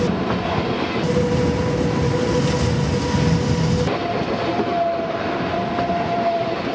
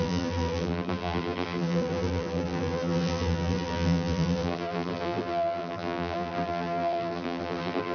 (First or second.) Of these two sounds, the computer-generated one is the second